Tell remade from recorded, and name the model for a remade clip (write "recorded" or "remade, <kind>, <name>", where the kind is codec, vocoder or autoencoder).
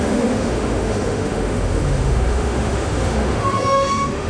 remade, autoencoder, DAC-VAE